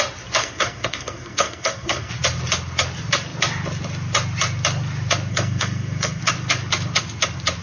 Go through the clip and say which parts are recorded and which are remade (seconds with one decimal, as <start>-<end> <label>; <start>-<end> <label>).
0.0-0.4 recorded; 0.4-2.1 remade; 2.1-5.3 recorded; 5.3-6.2 remade; 6.2-7.6 recorded